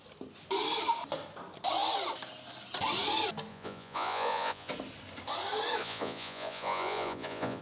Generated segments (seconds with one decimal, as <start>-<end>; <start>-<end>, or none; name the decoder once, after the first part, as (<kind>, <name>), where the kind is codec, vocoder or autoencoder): 3.5-4.7 (vocoder, Vocos); 5.8-7.6